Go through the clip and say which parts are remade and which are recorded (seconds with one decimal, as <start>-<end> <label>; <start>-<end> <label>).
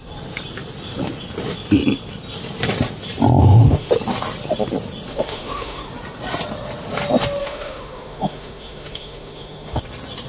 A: 0.0-3.4 recorded; 3.4-3.9 remade; 3.9-5.1 recorded; 5.1-5.9 remade; 5.9-7.4 recorded; 7.4-9.8 remade; 9.8-10.3 recorded